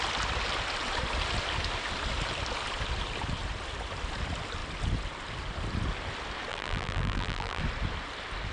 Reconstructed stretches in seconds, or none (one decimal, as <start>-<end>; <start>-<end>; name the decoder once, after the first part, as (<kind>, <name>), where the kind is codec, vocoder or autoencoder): 6.5-7.6 (vocoder, BigVGAN v2)

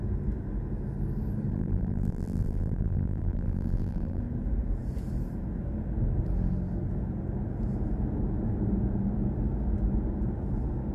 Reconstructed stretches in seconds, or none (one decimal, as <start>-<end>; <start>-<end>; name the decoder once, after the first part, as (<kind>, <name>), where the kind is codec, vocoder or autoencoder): 1.5-4.2 (vocoder, BigVGAN v2)

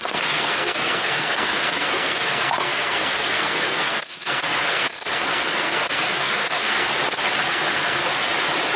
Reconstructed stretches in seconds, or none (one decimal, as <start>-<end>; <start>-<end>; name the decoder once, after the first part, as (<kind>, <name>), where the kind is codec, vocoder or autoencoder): 0.0-6.9 (codec, SNAC); 7.5-8.0

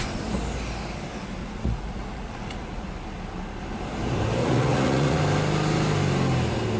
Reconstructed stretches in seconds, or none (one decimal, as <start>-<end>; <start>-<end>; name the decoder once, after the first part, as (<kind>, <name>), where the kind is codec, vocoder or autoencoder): 1.4-2.9 (vocoder, Vocos); 4.4-5.2

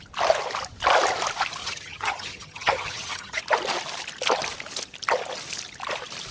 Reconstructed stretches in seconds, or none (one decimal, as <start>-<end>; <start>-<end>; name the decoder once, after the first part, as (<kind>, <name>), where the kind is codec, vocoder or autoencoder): 1.6-3.4 (vocoder, HiFi-GAN)

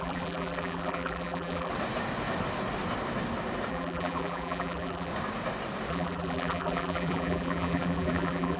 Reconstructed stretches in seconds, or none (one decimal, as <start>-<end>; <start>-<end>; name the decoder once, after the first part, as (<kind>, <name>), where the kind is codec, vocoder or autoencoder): 0.0-1.7 (vocoder, BigVGAN v2); 3.7-5.1; 5.9-8.6